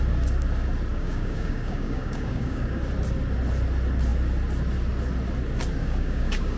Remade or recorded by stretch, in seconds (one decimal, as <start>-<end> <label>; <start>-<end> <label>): 0.0-0.9 recorded; 0.9-2.8 remade; 2.8-5.8 recorded; 5.8-6.6 remade